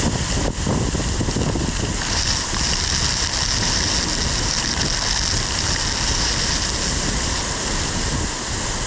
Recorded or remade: recorded